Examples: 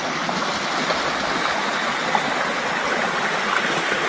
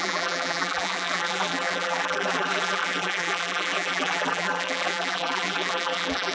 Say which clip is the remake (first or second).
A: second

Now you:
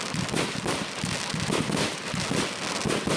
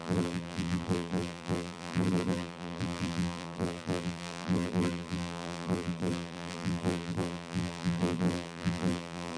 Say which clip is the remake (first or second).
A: second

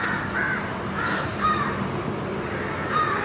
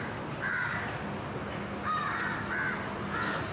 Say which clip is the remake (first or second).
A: first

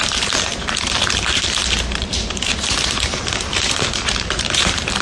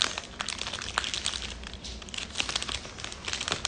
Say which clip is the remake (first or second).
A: first